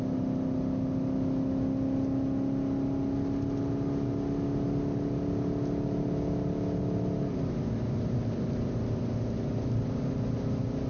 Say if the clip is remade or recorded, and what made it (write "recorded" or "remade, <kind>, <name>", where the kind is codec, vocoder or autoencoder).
recorded